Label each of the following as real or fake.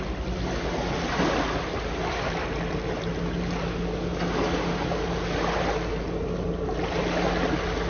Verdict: real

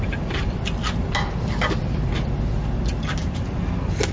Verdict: real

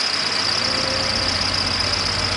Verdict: real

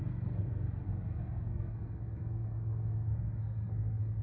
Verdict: fake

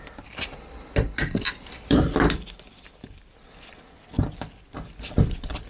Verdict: fake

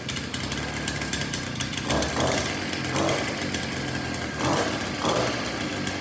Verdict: real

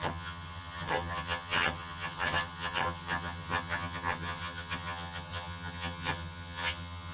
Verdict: fake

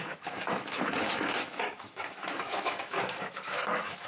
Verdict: fake